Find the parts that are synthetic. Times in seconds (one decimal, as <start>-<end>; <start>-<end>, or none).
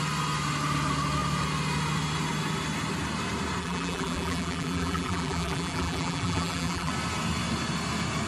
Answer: 3.6-6.9